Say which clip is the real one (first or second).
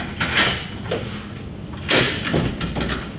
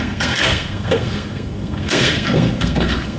first